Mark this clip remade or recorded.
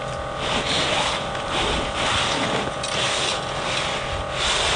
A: recorded